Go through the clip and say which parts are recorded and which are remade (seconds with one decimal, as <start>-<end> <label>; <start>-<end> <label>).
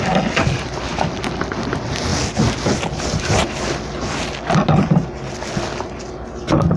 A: 0.0-6.8 recorded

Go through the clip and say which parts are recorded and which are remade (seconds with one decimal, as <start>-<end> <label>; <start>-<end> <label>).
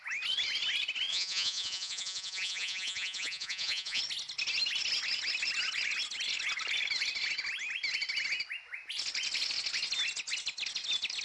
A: 0.0-1.1 recorded; 1.1-4.0 remade; 4.0-11.2 recorded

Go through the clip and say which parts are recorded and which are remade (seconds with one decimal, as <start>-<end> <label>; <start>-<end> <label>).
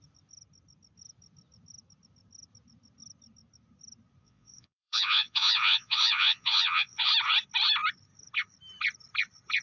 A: 0.0-4.2 recorded; 4.2-7.1 remade; 7.1-9.6 recorded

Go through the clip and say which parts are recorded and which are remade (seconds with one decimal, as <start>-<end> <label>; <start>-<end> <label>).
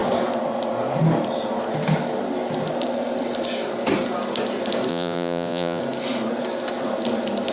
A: 0.0-4.9 recorded; 4.9-5.8 remade; 5.8-7.5 recorded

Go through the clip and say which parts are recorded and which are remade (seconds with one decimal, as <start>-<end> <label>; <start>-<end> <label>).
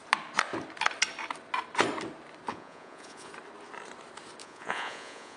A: 0.0-2.5 recorded; 2.5-3.3 remade; 3.3-4.4 recorded; 4.4-5.4 remade